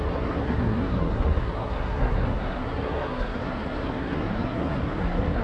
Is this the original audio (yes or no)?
no